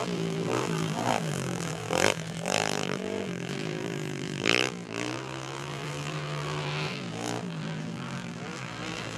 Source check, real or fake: fake